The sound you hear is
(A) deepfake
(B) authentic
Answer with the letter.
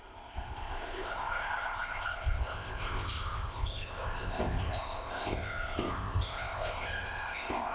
A